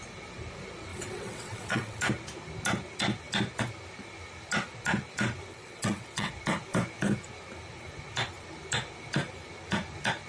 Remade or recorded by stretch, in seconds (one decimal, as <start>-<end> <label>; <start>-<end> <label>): 0.0-0.9 recorded; 0.9-2.0 remade; 2.0-5.5 recorded; 5.5-6.3 remade; 6.3-10.3 recorded